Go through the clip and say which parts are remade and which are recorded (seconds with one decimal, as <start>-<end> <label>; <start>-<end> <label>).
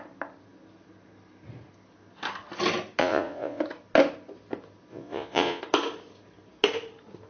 0.0-3.0 recorded; 3.0-3.6 remade; 3.6-4.9 recorded; 4.9-5.6 remade; 5.6-7.3 recorded